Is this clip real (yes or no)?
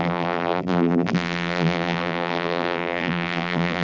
no